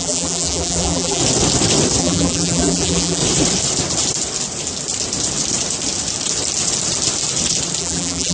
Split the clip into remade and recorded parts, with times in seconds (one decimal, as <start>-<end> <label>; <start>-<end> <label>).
0.0-1.2 remade; 1.2-2.0 recorded; 2.0-3.2 remade; 3.2-7.8 recorded; 7.8-8.3 remade